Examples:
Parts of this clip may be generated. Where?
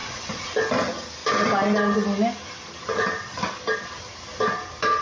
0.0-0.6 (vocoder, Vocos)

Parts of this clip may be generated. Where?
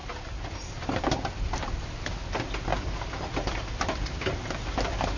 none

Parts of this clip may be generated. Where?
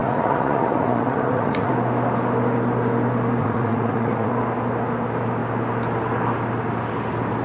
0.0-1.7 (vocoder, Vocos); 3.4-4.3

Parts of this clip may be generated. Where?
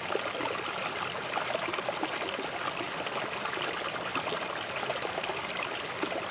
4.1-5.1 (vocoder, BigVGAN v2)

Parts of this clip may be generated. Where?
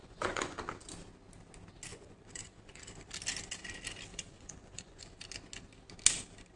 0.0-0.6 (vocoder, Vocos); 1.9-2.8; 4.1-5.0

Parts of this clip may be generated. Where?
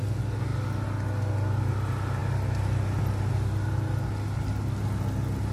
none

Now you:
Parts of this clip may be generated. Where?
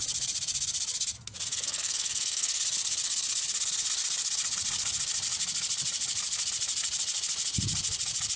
1.5-2.6 (codec, SNAC)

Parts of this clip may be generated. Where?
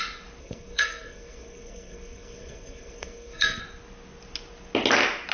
0.4-3.6 (codec, SNAC)